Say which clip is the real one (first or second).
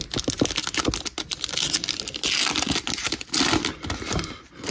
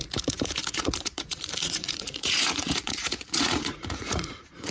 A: first